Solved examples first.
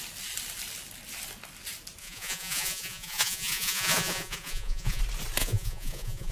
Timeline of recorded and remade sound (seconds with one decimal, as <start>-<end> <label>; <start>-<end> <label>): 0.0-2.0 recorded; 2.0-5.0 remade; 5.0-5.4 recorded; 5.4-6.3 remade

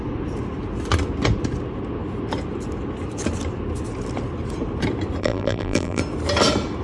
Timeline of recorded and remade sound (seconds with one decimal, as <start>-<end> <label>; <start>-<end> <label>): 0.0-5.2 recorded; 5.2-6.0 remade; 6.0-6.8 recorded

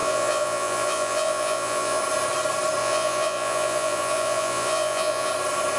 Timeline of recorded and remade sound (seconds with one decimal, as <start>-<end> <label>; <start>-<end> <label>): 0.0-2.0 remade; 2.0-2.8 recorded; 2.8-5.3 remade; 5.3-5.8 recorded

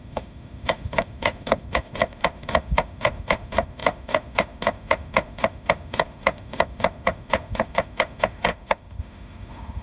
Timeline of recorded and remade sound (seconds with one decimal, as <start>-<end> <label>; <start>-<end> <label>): 0.0-9.8 remade

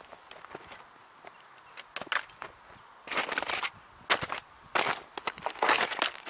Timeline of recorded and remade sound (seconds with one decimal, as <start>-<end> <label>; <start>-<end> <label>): 0.0-6.3 recorded